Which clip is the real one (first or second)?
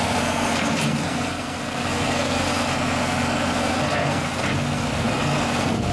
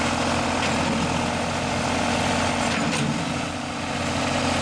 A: second